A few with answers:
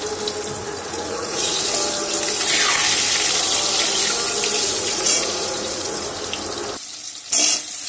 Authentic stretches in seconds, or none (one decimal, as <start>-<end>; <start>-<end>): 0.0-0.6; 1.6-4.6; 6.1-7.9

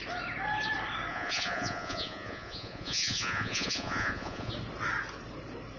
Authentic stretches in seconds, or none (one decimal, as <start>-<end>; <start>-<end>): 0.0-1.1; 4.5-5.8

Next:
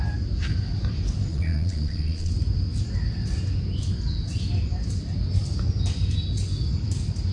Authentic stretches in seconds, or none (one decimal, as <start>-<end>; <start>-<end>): 0.0-1.3; 2.3-7.3

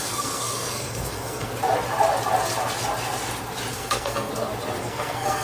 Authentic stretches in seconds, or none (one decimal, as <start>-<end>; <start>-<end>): 1.5-3.7; 4.3-4.8

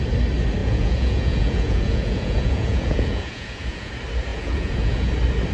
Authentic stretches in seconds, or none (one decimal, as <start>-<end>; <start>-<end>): 0.0-0.6; 3.9-4.3; 5.1-5.5